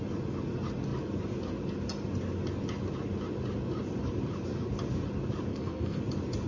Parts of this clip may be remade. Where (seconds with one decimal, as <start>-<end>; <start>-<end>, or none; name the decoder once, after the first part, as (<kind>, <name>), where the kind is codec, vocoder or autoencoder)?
5.5-6.0 (codec, SNAC)